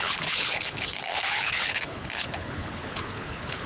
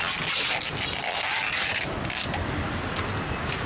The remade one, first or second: first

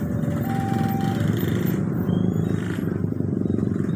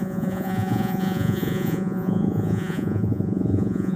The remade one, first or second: second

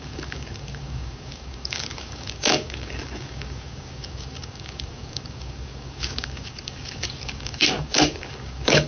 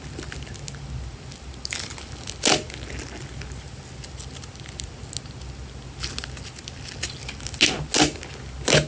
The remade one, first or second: first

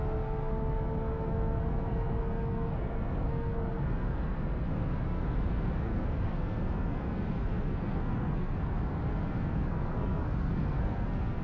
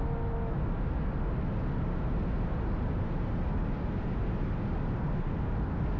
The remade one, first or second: first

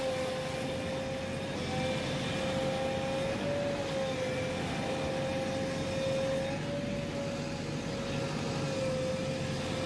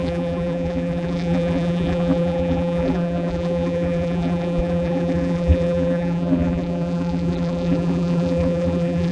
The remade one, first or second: second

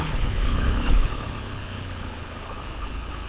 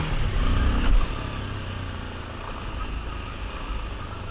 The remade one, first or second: first